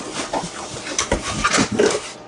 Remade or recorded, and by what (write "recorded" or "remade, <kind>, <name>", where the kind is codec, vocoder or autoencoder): recorded